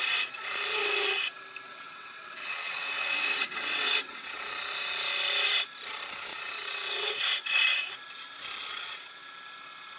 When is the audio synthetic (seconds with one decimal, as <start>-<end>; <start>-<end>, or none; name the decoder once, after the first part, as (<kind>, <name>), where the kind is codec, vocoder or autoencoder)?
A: 1.7-4.4 (vocoder, WaveNeXt); 6.3-7.2; 8.7-9.2